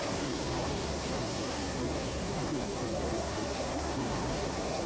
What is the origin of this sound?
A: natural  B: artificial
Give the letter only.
B